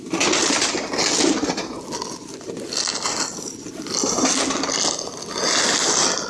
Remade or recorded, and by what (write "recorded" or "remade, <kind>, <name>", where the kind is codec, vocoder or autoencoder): recorded